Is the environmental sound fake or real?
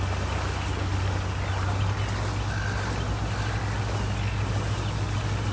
real